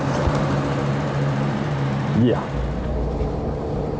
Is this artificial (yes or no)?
yes